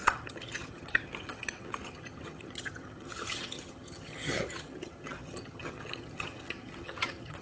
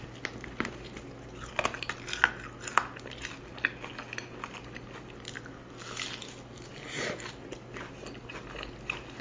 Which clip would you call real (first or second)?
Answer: second